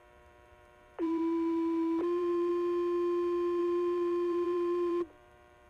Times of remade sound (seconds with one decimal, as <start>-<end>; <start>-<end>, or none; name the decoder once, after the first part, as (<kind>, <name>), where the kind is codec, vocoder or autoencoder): 0.0-2.5 (vocoder, BigVGAN v2); 3.6-5.7